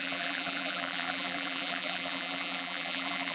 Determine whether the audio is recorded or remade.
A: remade